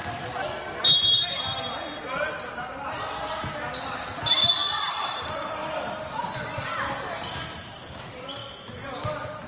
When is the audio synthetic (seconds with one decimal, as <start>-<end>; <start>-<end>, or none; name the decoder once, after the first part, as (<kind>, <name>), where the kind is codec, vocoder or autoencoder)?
none